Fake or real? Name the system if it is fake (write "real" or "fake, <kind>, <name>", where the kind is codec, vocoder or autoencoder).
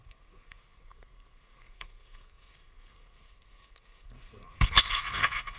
fake, codec, SNAC